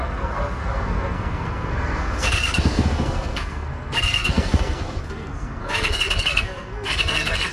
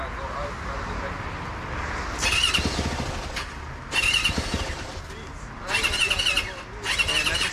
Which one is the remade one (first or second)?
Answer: first